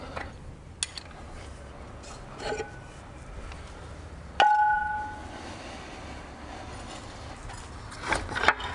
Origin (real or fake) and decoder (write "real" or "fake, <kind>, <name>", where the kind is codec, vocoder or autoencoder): real